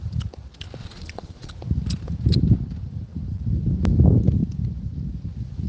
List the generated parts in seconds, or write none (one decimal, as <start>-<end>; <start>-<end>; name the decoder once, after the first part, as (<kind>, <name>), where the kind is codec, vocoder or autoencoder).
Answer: 0.8-1.5 (vocoder, Vocos)